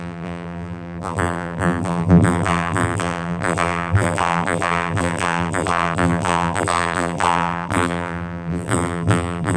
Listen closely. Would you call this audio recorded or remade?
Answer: remade